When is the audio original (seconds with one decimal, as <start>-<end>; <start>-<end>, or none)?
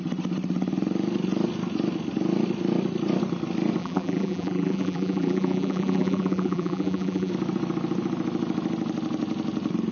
0.0-3.8; 7.3-9.9